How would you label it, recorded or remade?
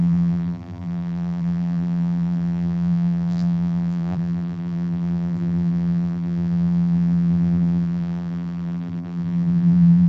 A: remade